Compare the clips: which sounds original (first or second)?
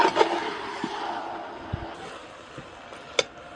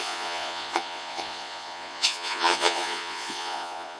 first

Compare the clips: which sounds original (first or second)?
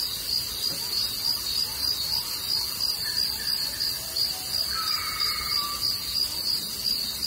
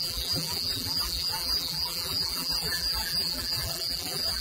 first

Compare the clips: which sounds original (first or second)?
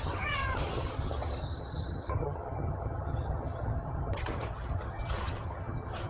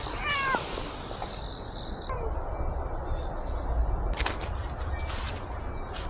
second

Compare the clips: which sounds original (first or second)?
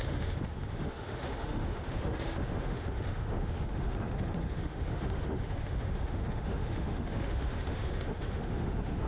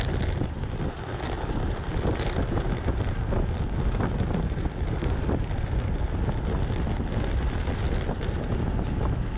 second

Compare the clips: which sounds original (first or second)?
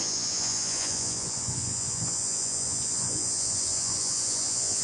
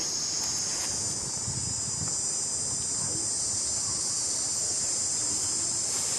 second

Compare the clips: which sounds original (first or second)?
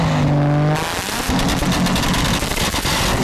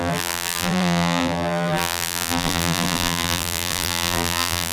first